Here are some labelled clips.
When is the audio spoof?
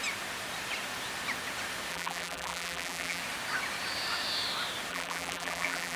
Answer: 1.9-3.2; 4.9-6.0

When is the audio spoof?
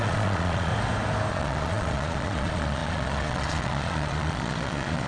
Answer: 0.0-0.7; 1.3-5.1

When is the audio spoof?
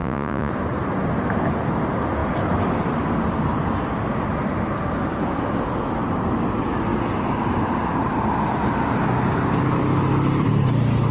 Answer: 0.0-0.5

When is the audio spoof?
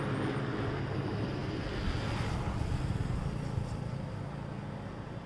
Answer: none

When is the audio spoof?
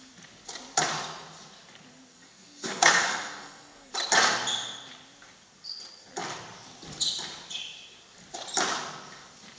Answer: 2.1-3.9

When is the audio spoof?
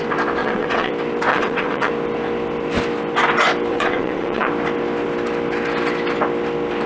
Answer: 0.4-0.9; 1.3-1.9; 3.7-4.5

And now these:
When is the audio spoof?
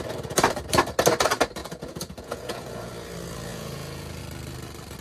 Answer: 1.6-2.9; 3.5-4.2